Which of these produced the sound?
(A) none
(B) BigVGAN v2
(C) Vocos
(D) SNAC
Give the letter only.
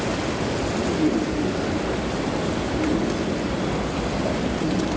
A